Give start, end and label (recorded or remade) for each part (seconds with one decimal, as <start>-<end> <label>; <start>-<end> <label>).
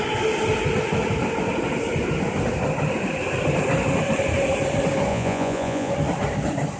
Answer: 0.0-5.1 recorded; 5.1-5.9 remade; 5.9-6.8 recorded